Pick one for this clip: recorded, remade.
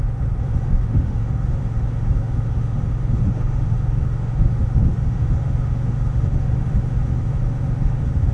remade